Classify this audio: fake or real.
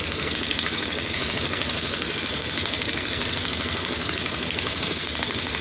fake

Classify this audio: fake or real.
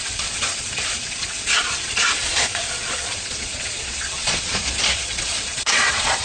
fake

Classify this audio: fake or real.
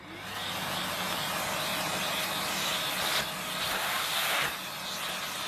real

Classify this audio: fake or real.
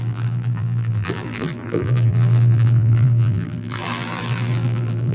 fake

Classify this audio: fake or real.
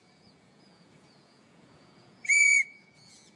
fake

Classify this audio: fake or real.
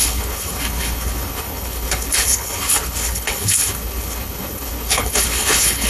fake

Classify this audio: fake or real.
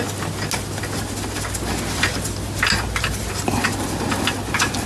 real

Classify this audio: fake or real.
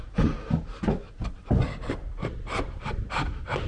real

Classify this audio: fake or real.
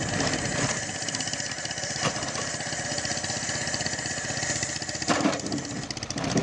real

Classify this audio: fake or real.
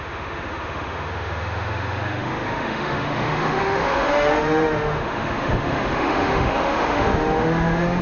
fake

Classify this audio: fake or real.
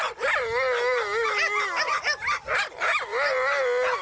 real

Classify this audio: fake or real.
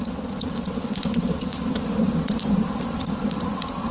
real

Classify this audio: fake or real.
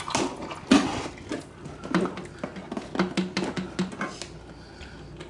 real